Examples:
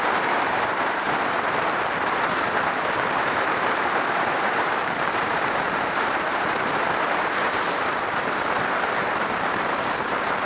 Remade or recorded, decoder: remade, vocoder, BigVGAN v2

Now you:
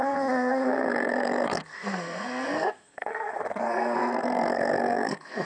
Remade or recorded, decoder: remade, codec, SNAC